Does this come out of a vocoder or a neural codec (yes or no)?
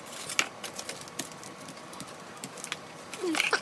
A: no